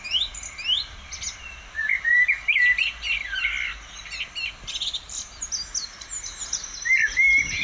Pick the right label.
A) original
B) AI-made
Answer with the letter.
A